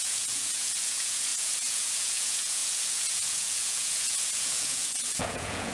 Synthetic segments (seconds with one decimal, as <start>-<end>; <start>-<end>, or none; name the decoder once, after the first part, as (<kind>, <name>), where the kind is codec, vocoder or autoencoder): 0.0-5.7 (vocoder, Vocos)